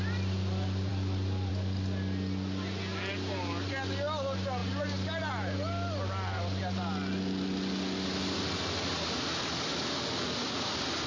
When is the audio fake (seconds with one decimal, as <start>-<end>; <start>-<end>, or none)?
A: none